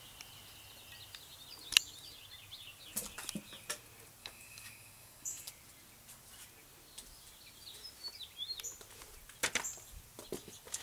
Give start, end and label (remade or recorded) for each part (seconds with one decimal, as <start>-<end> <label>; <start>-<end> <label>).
0.0-4.2 recorded; 4.2-5.5 remade; 5.5-10.8 recorded